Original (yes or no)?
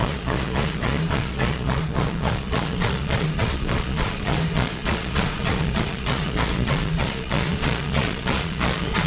no